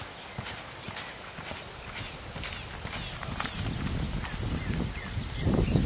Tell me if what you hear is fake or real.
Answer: real